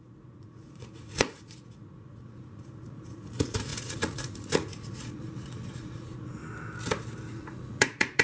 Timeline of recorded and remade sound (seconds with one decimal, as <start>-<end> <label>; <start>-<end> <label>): 0.0-6.4 remade; 6.4-7.3 recorded; 7.3-8.2 remade